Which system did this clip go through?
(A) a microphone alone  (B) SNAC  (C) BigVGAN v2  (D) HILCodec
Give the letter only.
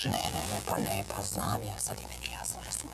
C